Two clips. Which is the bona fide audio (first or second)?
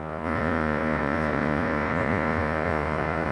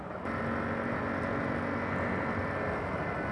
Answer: second